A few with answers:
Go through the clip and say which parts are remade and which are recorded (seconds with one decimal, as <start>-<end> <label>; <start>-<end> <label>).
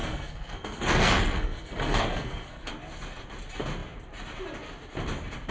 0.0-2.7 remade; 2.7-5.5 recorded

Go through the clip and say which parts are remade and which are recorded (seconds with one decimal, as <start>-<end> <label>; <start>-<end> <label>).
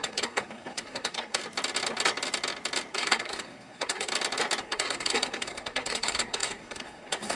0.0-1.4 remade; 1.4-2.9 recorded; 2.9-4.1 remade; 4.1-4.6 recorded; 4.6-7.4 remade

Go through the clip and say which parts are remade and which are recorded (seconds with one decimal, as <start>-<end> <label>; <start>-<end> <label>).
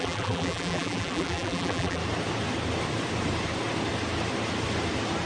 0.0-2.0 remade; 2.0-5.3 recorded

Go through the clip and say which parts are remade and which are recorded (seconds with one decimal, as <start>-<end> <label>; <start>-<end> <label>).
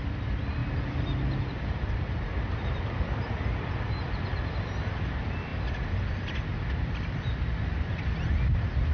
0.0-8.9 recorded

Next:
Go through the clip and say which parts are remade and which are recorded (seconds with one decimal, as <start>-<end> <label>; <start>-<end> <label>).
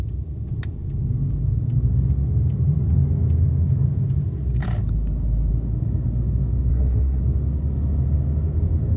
0.0-6.7 recorded; 6.7-7.2 remade; 7.2-9.0 recorded